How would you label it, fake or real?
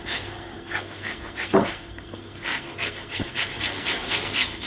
fake